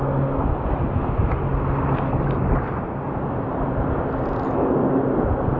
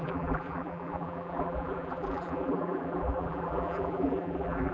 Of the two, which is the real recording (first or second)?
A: first